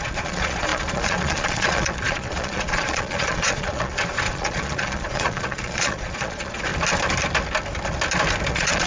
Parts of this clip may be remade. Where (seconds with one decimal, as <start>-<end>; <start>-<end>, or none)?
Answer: 0.0-6.7; 8.5-8.9